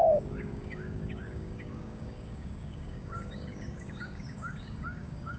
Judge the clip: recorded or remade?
remade